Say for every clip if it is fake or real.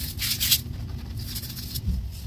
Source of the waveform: real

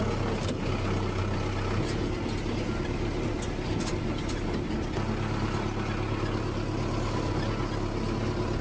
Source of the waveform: real